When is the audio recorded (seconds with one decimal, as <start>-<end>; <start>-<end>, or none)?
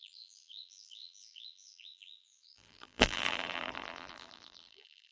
none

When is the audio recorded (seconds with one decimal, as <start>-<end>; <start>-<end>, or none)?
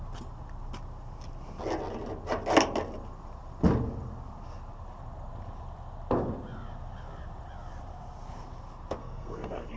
0.0-9.0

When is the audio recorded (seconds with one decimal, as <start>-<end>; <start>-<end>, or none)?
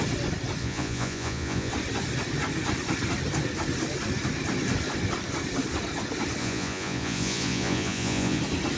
0.0-0.6; 1.7-6.4; 8.4-8.8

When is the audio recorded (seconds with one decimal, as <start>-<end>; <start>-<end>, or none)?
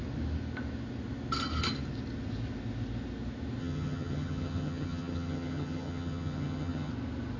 0.0-3.6; 6.9-7.4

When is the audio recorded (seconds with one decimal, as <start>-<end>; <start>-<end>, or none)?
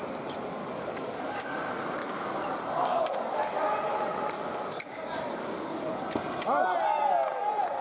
0.0-0.6; 1.5-2.0; 6.0-7.8